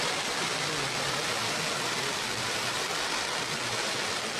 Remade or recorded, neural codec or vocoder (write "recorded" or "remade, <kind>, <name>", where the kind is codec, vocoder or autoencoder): recorded